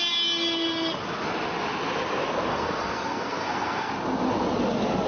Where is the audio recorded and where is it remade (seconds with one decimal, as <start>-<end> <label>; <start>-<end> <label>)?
0.0-2.5 recorded; 2.5-3.9 remade; 3.9-5.1 recorded